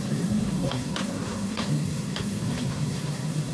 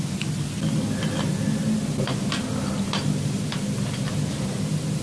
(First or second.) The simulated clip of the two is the first